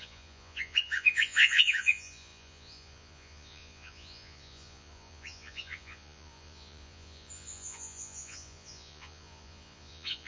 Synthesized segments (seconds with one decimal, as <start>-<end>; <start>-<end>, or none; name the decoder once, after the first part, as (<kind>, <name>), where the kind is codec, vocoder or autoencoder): 0.0-10.3 (vocoder, Vocos)